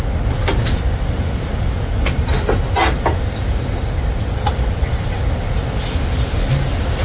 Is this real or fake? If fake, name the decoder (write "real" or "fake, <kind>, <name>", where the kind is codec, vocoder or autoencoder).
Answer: real